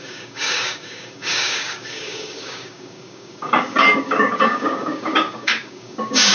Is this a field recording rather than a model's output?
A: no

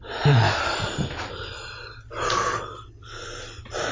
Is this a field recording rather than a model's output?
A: yes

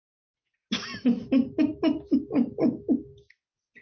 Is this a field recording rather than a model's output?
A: yes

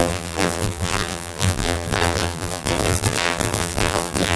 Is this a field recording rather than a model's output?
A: no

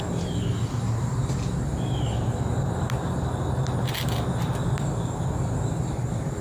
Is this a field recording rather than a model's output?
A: yes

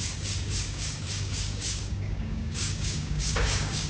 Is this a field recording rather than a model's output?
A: no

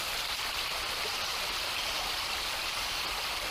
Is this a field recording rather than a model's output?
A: yes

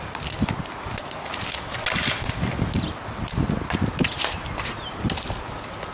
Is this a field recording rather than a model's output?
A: yes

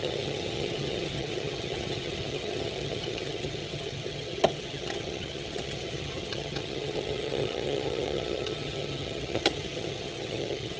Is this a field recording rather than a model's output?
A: no